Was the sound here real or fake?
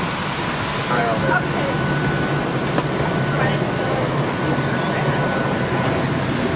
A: real